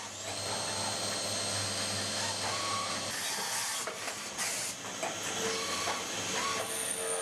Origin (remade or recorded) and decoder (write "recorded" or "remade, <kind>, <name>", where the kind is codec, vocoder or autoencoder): recorded